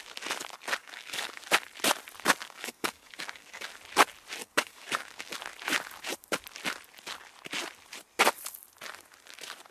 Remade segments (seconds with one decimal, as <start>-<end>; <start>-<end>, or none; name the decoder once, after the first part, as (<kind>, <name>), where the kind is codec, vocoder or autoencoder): 0.8-1.4 (codec, DAC); 2.4-3.7; 4.4-5.3